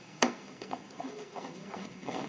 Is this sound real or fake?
fake